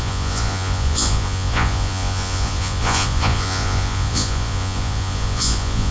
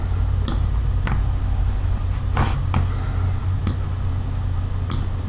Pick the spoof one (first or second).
first